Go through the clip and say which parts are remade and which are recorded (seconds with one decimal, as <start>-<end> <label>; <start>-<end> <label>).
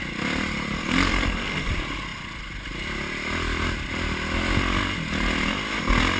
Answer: 0.0-0.8 recorded; 0.8-1.7 remade; 1.7-6.2 recorded